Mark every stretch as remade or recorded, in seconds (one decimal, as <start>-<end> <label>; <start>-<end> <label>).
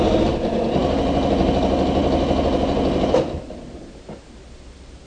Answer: 0.0-5.1 recorded